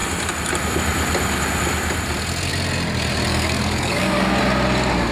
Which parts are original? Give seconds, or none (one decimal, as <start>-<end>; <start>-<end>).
0.0-3.3; 4.4-5.1

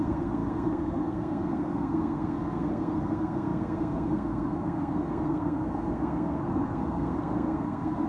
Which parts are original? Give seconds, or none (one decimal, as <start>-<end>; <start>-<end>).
none

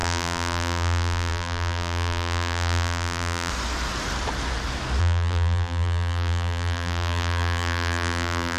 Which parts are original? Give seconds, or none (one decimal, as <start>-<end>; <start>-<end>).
3.5-5.0

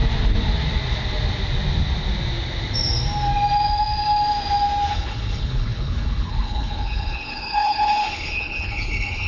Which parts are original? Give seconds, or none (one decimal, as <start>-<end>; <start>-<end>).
0.0-4.9